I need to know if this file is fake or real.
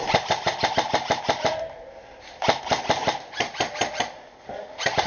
real